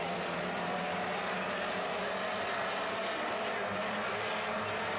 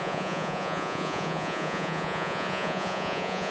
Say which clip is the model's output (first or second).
second